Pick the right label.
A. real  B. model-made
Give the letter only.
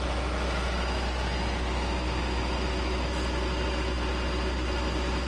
A